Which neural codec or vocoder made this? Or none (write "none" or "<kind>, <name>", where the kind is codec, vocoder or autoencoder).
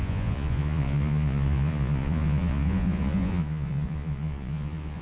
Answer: vocoder, Vocos